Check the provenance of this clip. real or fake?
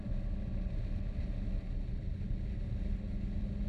real